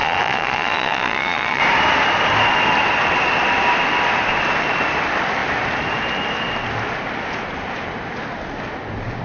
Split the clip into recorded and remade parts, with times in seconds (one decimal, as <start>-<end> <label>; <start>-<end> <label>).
0.0-1.6 remade; 1.6-9.2 recorded